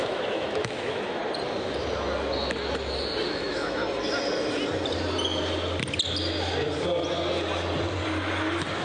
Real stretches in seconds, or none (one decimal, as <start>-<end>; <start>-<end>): 1.2-3.3; 3.8-8.8